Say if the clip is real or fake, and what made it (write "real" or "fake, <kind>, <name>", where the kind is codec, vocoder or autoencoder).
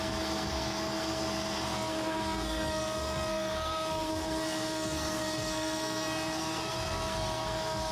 fake, codec, SNAC